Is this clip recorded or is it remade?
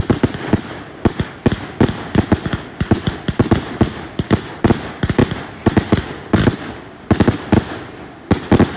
recorded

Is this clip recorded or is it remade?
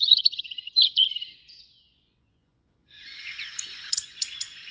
remade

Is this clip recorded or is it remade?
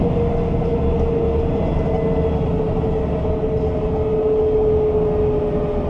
recorded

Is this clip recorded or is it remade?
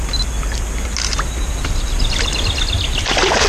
recorded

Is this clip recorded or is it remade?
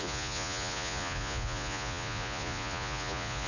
remade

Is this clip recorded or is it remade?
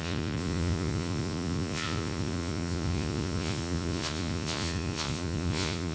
remade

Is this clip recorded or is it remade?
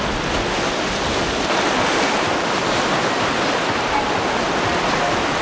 recorded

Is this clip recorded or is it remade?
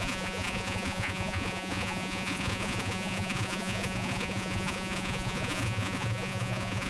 remade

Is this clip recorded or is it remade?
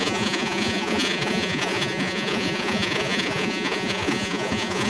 remade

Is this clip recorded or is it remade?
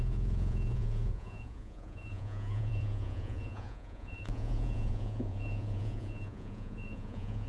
remade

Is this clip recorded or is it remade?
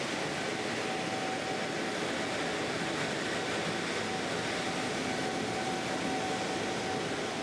recorded